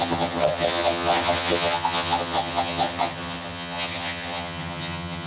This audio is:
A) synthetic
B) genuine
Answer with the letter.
A